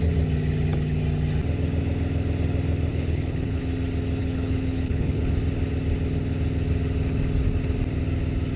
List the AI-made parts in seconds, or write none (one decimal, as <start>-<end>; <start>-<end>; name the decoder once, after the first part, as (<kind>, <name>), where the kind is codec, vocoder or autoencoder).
2.9-3.6 (codec, HILCodec); 4.2-5.2

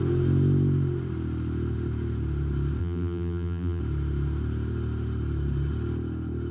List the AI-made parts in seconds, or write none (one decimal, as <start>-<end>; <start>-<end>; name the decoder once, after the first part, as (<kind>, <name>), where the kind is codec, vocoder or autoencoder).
2.8-3.8 (vocoder, BigVGAN v2)

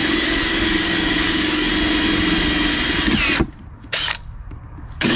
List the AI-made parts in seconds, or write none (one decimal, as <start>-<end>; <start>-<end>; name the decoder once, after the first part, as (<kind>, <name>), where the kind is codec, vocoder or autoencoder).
0.0-1.7 (codec, DAC); 3.7-5.2

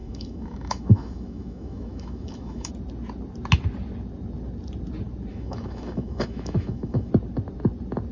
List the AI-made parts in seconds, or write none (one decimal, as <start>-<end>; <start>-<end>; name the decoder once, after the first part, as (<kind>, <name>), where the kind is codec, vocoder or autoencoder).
0.0-2.7 (autoencoder, DAC-VAE); 5.3-7.1

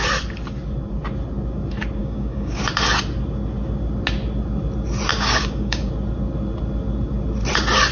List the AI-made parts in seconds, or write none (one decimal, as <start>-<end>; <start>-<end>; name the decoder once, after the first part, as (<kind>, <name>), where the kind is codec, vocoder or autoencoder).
2.0-2.6 (codec, DAC); 5.1-5.9

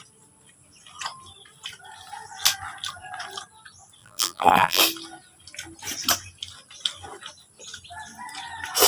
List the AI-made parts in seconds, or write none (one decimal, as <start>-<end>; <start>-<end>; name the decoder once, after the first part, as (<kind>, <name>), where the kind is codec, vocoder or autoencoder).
4.0-4.8 (vocoder, BigVGAN v2)

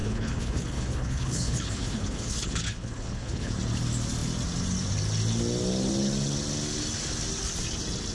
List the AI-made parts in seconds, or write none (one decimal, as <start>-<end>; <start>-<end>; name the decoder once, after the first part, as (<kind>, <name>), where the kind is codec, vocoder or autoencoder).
0.0-3.5 (codec, HILCodec)

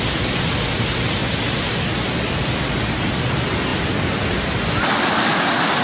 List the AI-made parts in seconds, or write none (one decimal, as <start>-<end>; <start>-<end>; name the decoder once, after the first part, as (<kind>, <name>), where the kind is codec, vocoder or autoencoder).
none